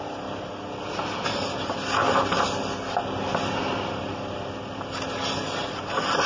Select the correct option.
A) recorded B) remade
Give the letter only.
A